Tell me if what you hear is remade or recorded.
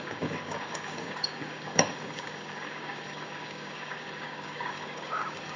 remade